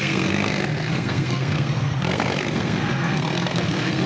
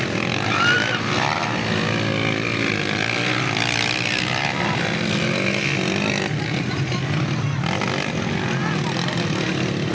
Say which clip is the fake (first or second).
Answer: first